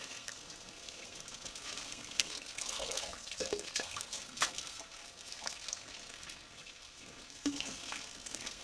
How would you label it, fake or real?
fake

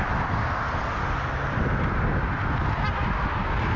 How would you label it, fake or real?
real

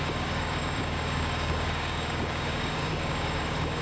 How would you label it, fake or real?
fake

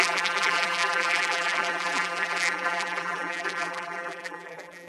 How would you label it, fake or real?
fake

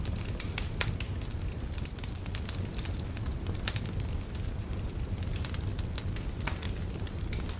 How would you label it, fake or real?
real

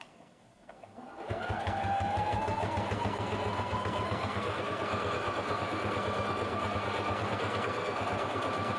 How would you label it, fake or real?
fake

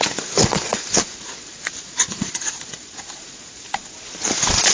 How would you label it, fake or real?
fake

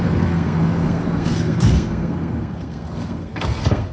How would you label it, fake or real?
fake